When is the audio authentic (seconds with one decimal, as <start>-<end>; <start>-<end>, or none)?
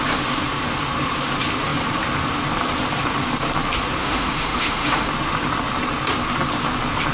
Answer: 0.0-4.0; 5.1-7.1